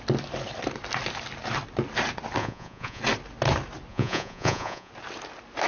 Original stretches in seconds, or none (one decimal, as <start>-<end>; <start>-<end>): 0.0-2.4; 3.0-3.9; 4.9-5.7